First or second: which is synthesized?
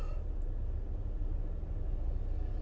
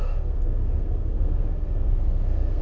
second